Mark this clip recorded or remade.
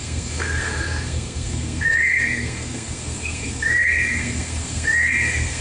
remade